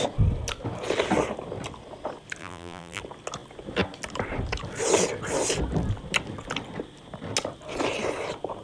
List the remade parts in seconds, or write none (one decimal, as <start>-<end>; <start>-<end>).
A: 2.4-3.0